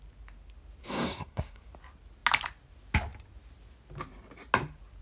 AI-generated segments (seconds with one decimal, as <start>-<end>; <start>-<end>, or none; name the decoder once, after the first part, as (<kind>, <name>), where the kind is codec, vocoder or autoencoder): 0.8-1.7 (codec, SNAC)